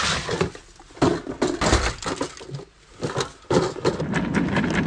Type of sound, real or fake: real